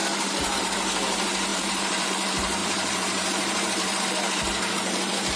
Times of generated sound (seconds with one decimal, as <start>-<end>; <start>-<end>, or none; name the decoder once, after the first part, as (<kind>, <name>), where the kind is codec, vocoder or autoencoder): 0.0-0.6 (vocoder, BigVGAN v2); 1.5-2.1; 2.6-4.0